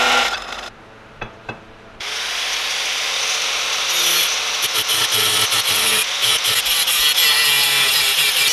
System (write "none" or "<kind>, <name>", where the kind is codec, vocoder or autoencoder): none